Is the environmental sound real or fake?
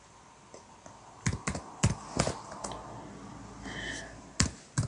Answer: real